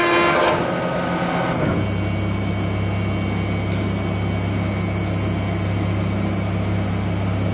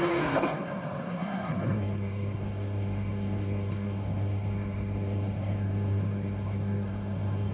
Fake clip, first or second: second